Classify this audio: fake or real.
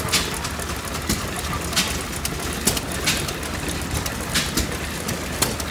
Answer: real